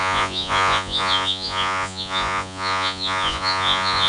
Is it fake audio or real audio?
fake